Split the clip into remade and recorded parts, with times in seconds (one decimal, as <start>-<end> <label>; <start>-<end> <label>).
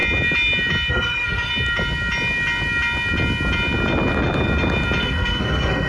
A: 0.0-0.9 recorded; 0.9-1.5 remade; 1.5-5.0 recorded; 5.0-5.9 remade